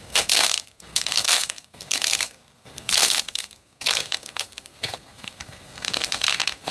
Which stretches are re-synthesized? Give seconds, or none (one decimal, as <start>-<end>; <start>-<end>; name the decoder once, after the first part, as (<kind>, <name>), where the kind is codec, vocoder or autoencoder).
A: 0.0-6.7 (codec, SNAC)